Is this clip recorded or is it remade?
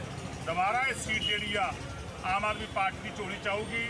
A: recorded